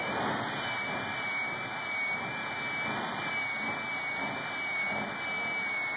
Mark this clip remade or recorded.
recorded